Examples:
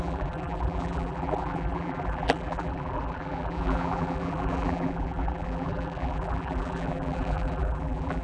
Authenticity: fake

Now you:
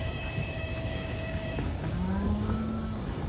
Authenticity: fake